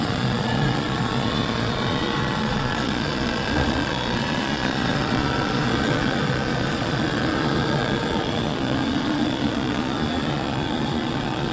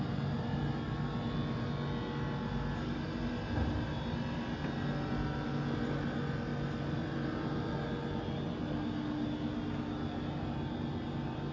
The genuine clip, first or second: second